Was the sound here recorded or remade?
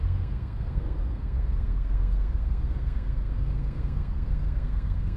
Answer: remade